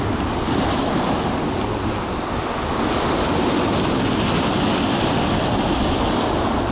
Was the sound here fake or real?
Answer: real